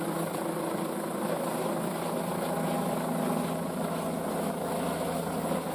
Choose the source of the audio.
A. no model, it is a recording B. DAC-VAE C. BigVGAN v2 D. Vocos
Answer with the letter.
A